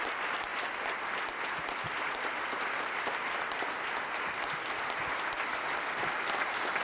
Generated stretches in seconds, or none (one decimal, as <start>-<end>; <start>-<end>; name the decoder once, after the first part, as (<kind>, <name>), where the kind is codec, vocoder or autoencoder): none